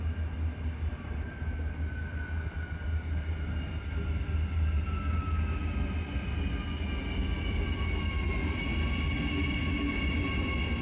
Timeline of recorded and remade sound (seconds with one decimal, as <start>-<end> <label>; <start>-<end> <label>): 0.0-10.8 recorded